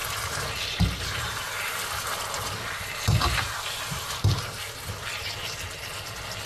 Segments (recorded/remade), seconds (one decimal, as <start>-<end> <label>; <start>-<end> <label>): 0.0-6.5 recorded